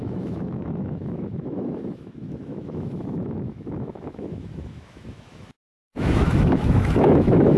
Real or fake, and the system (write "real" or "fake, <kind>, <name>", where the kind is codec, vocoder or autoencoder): fake, autoencoder, DAC-VAE